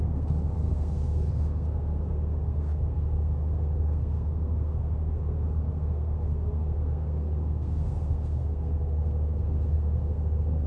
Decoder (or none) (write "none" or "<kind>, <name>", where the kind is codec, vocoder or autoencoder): codec, SNAC